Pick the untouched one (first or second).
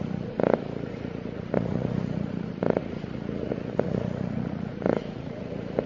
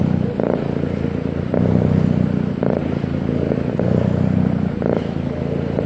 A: second